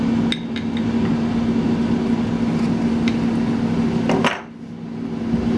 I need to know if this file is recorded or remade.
recorded